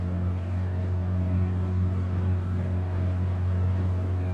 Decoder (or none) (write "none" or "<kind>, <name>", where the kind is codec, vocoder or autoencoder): codec, DAC